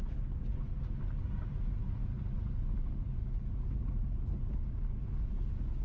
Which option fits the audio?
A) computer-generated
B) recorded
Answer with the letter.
B